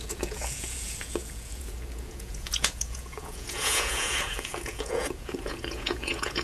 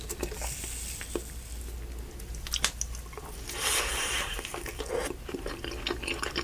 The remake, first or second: first